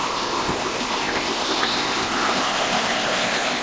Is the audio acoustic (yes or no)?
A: no